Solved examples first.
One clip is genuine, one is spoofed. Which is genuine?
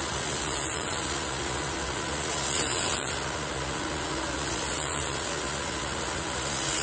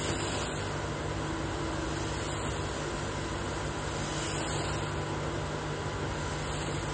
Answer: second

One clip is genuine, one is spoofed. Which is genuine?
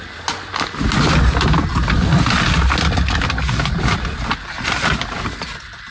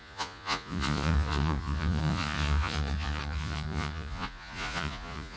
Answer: first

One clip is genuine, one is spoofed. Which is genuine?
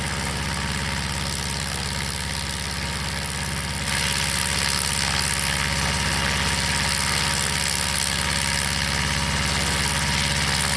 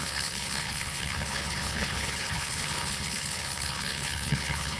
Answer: first